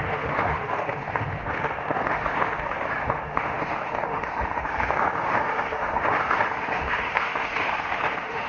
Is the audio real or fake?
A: fake